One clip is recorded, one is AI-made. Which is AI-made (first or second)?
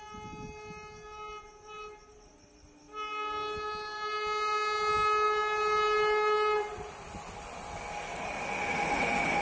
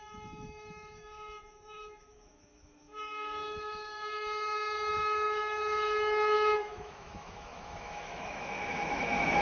second